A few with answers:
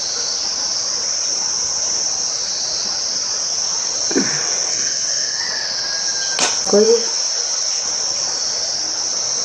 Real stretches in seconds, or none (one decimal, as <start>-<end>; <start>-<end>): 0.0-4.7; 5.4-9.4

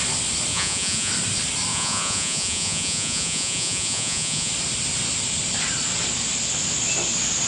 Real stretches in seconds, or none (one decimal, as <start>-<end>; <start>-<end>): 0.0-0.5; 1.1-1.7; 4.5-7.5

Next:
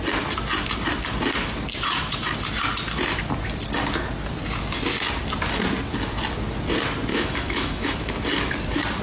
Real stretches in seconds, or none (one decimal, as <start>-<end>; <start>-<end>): 0.0-7.1; 8.1-9.0

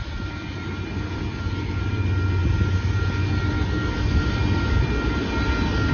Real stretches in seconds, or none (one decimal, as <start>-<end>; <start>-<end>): 0.0-5.9